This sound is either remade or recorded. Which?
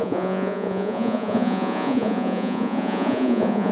remade